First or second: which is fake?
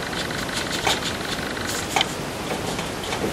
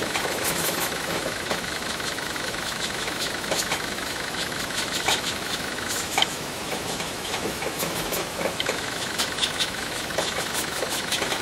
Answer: second